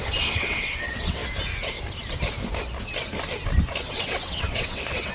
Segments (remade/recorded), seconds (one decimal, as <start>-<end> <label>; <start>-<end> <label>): 0.0-1.2 remade; 1.2-3.8 recorded; 3.8-5.1 remade